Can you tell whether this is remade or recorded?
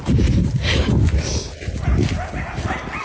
recorded